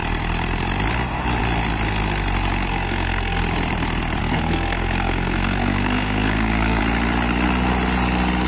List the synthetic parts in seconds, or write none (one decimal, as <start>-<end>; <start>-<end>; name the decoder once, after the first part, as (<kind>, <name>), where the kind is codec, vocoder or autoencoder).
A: 2.7-3.4 (codec, SNAC); 4.2-6.8